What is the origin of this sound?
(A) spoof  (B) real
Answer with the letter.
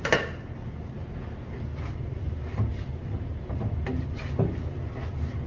B